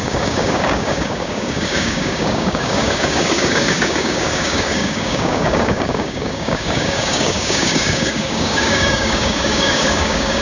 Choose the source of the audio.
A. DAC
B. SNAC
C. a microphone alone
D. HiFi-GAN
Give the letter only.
A